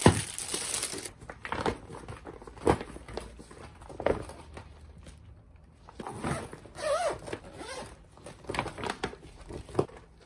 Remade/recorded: recorded